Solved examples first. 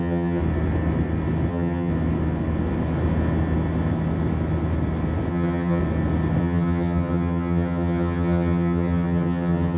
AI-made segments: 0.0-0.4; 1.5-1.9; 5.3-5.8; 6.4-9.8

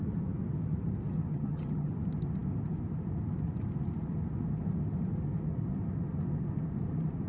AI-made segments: 1.3-1.9

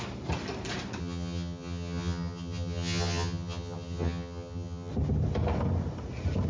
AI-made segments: 1.0-4.9

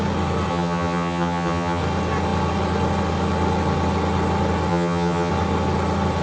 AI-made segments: 0.5-1.8; 4.7-5.3

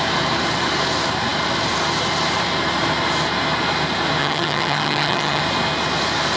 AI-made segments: 4.2-5.4

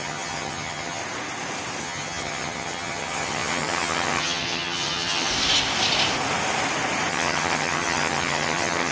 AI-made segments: 0.0-1.0; 1.8-5.3; 7.1-8.9

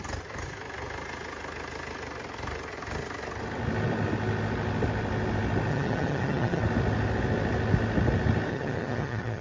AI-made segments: 5.7-6.6; 8.5-9.4